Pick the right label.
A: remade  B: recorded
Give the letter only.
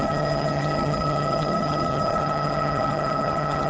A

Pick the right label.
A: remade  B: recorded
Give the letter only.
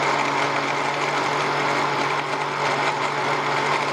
B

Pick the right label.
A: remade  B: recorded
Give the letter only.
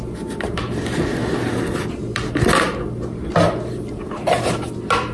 B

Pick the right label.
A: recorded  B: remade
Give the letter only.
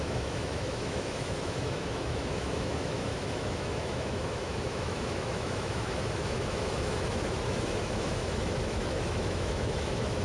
B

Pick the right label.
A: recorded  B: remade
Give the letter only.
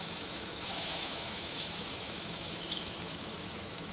B